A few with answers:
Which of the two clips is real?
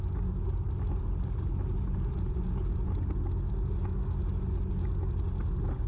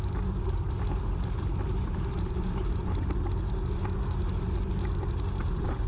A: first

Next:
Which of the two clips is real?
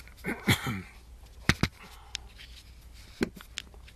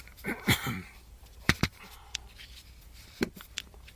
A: first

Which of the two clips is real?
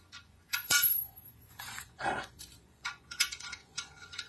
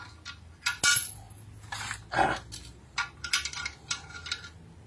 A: second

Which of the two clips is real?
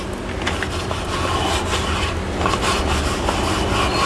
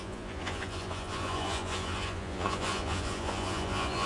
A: first